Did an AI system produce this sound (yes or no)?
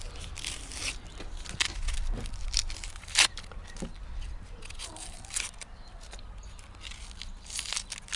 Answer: no